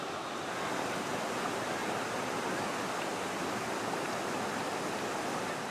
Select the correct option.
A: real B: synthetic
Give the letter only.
A